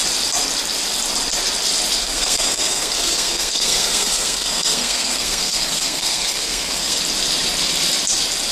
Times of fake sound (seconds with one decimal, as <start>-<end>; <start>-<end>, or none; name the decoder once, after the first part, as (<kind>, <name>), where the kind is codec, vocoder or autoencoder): 2.0-7.0 (codec, SNAC)

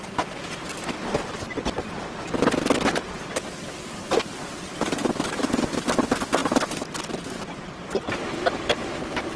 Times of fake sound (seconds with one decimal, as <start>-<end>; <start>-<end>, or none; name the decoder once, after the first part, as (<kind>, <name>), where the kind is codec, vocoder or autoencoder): none

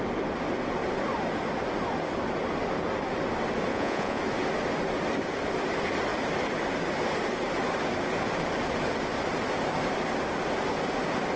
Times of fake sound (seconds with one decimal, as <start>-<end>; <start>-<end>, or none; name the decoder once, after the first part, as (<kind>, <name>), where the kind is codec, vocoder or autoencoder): 3.7-4.2 (vocoder, Vocos)

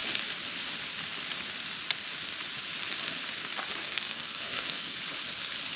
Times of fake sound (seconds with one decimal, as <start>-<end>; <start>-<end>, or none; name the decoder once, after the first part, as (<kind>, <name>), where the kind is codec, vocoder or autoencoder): 3.8-5.0 (codec, SNAC)

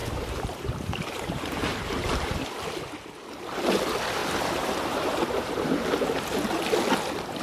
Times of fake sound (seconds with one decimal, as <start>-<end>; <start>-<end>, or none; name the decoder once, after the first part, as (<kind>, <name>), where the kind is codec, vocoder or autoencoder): 0.0-2.4 (vocoder, BigVGAN v2); 4.2-6.6

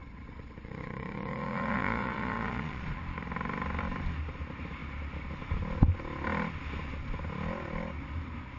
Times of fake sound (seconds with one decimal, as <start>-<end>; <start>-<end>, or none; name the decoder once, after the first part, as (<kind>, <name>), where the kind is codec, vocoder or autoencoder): 0.0-3.0 (vocoder, Vocos)

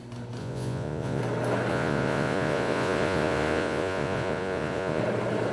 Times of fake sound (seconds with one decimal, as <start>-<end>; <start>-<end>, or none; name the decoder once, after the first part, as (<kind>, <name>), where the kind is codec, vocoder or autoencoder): 0.4-1.2 (vocoder, Vocos); 1.7-5.0

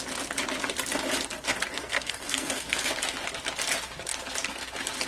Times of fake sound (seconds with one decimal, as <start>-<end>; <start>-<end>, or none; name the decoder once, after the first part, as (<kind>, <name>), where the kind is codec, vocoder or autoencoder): 1.7-2.9 (codec, SNAC)